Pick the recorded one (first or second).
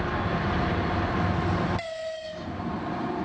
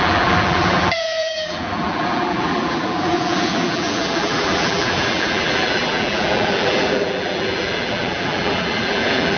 first